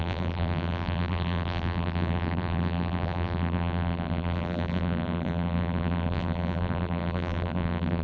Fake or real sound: fake